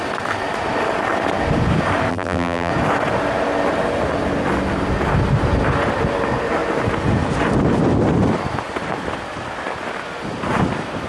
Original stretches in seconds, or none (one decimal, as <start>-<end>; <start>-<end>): 0.0-2.1; 2.7-11.1